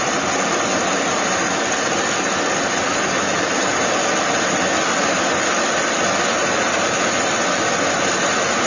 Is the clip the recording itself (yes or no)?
yes